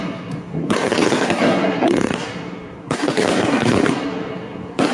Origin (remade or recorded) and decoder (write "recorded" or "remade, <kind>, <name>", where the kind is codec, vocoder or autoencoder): remade, codec, SNAC